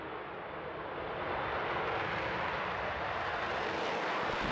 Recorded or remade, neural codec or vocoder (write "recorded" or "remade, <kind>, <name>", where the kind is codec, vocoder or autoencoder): recorded